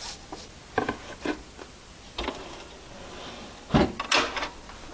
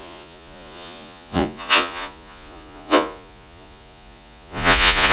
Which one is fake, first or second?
second